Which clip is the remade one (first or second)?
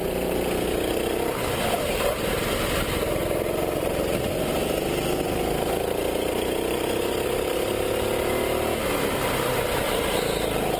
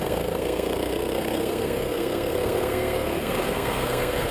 second